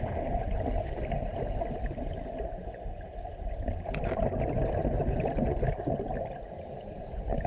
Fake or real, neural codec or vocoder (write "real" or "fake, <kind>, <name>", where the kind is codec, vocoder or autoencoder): real